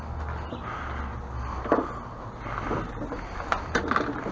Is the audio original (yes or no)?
yes